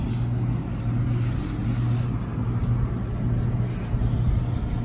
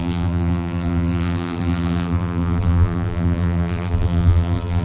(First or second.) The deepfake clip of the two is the second